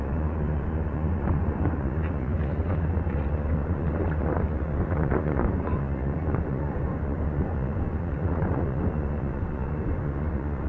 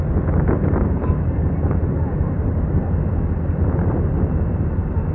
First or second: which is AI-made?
first